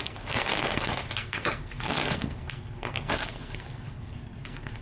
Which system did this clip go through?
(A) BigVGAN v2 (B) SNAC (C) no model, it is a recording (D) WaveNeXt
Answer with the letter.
B